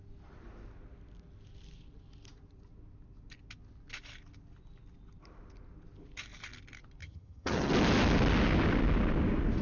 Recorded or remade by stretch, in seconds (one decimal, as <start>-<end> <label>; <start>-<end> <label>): 0.0-7.0 recorded; 7.0-7.7 remade; 7.7-9.6 recorded